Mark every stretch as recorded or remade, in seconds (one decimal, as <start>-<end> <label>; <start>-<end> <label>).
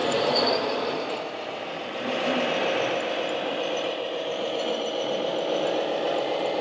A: 0.0-2.3 remade; 2.3-3.6 recorded; 3.6-5.3 remade; 5.3-6.6 recorded